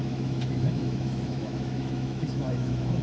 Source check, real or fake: fake